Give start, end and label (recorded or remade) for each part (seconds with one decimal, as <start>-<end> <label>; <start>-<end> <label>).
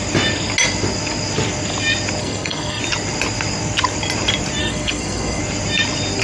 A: 0.0-2.2 recorded; 2.2-2.8 remade; 2.8-4.6 recorded; 4.6-5.4 remade; 5.4-6.2 recorded